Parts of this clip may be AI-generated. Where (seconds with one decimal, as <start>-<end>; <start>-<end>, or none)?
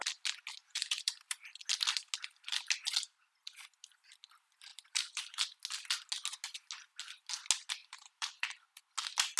0.6-1.5; 4.7-5.6; 7.8-8.8